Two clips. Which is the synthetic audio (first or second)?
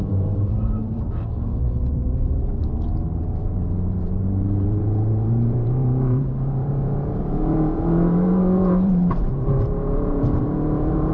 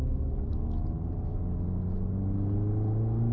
first